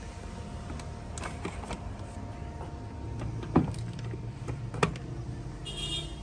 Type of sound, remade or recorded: recorded